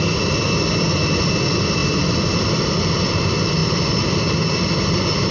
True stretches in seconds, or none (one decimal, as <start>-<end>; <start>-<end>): 0.0-5.3